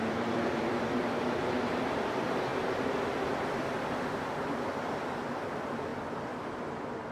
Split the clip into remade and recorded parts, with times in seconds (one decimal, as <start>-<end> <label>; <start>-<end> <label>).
0.0-2.5 remade; 2.5-3.6 recorded; 3.6-7.1 remade